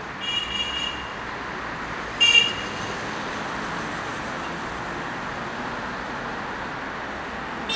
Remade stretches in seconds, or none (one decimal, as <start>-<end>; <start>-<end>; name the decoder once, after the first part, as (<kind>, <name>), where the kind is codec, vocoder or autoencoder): none